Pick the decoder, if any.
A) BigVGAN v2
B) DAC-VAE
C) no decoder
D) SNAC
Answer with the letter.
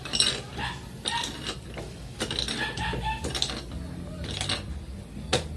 C